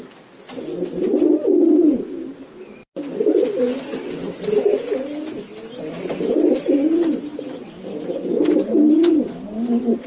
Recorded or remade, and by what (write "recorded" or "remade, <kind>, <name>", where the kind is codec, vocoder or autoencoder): recorded